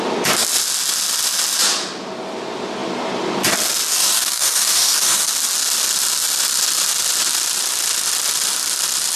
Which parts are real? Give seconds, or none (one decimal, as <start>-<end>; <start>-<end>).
0.0-3.9; 5.3-9.2